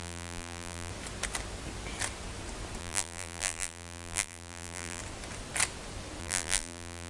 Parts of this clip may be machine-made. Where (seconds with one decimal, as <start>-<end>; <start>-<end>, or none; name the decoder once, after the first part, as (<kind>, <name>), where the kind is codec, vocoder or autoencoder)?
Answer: 0.0-0.9 (vocoder, BigVGAN v2); 2.8-5.0; 6.2-7.1